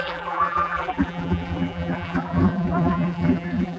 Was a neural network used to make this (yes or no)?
yes